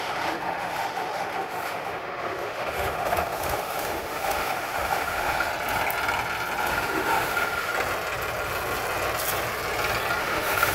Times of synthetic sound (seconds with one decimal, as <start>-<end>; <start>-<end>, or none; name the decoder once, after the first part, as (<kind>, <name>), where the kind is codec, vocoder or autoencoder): 0.0-5.5 (autoencoder, DAC-VAE); 6.7-7.7; 10.2-10.7